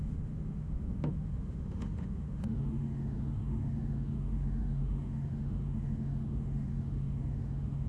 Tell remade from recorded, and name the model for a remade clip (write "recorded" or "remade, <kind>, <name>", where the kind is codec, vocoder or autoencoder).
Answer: remade, autoencoder, DAC-VAE